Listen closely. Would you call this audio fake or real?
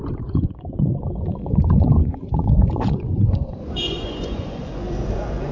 fake